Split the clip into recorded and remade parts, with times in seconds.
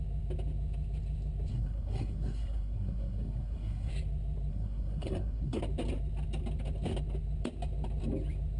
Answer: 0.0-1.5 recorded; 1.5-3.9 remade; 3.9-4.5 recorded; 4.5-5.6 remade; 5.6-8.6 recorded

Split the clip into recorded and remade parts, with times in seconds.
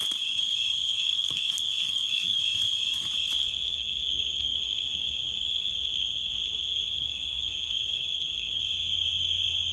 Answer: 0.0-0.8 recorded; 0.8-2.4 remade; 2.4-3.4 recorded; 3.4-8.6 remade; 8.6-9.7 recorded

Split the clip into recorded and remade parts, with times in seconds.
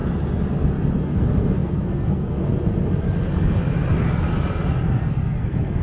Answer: 0.0-1.0 recorded; 1.0-2.7 remade; 2.7-5.0 recorded; 5.0-5.8 remade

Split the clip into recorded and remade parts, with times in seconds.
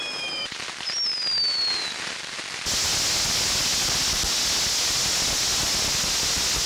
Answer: 0.0-6.7 recorded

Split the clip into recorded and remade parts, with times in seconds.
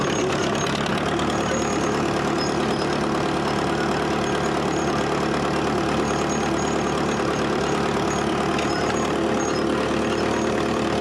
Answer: 0.0-11.0 recorded